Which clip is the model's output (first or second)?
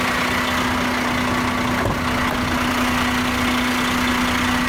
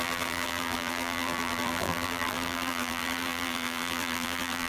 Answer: second